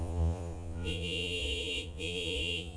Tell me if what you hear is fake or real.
fake